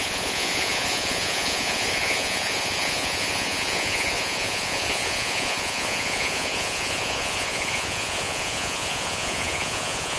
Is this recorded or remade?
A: remade